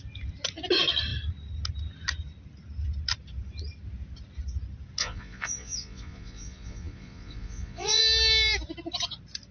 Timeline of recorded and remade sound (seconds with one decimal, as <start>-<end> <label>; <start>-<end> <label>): 0.0-5.0 recorded; 5.0-8.0 remade; 8.0-9.5 recorded